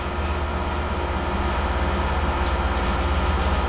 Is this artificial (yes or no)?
no